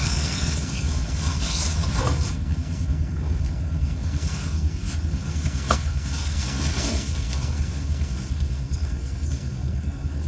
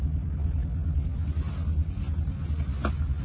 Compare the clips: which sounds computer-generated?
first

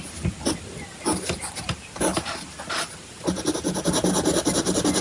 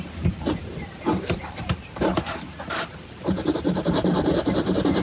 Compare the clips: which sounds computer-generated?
second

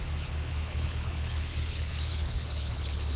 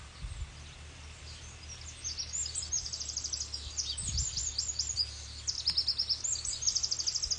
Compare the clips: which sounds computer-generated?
first